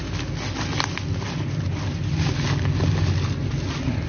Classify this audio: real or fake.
real